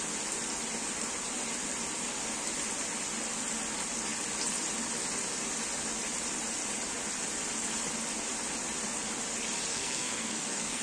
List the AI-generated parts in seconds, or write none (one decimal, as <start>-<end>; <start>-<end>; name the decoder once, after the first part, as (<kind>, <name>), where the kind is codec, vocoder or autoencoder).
9.7-10.8 (codec, SNAC)